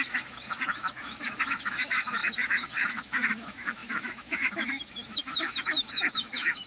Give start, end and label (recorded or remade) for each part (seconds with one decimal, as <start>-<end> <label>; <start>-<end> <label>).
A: 0.0-6.7 remade